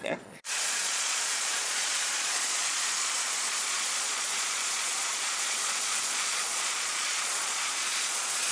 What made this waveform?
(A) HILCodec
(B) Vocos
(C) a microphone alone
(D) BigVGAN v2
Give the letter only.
B